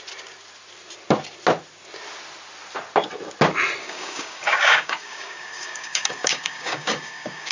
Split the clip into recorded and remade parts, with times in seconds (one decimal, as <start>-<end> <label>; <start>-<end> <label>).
0.0-3.8 recorded; 3.8-7.5 remade